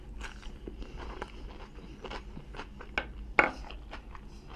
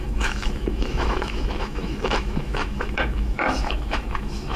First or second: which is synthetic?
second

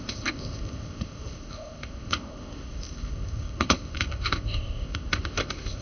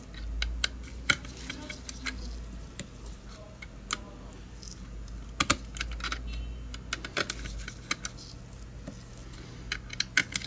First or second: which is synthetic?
first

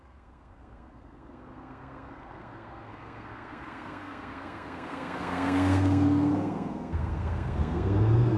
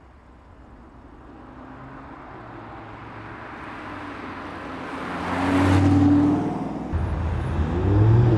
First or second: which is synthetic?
first